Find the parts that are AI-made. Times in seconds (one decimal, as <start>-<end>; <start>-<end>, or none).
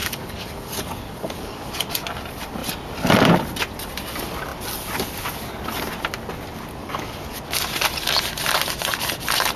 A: 0.0-1.7; 6.8-7.4